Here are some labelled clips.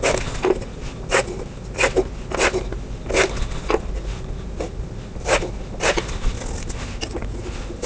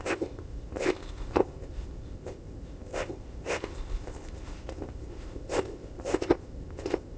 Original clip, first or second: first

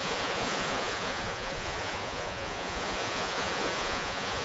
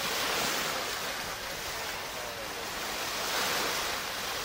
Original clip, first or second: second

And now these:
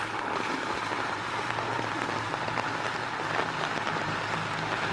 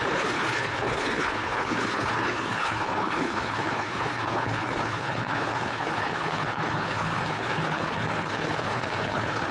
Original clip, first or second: first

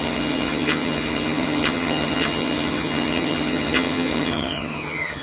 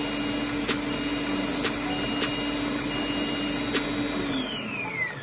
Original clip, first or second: second